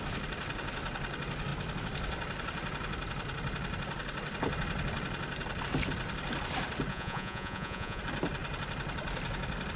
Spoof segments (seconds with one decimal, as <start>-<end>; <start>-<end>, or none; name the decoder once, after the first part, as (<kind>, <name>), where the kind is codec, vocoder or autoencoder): 6.9-8.0 (vocoder, Vocos)